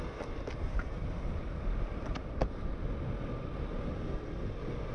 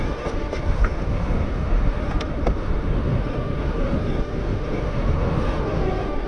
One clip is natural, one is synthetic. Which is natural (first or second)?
first